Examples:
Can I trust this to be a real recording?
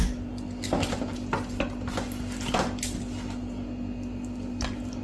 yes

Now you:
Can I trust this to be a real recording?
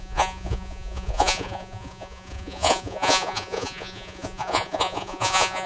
no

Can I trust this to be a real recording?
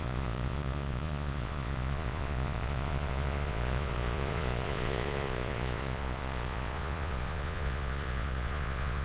no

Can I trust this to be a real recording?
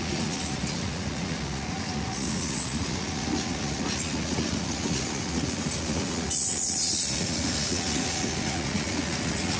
no